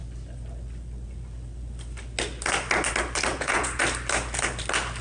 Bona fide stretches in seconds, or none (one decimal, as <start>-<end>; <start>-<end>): 0.0-3.3; 3.8-5.0